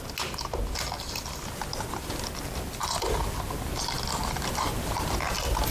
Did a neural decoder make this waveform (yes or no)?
no